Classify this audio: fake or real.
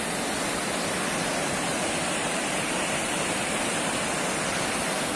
fake